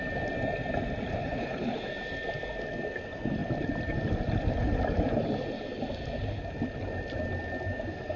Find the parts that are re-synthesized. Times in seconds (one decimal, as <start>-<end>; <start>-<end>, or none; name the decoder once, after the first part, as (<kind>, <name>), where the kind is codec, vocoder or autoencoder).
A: 1.2-1.8 (codec, HILCodec)